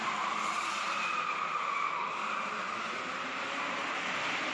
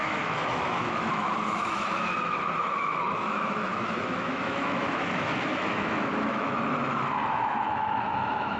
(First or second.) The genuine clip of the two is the first